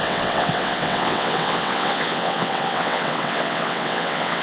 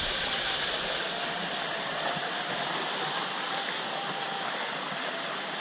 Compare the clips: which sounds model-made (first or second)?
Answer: first